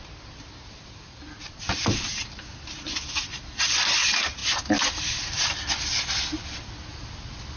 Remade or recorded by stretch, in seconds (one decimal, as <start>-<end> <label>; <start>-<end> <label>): 0.0-7.6 recorded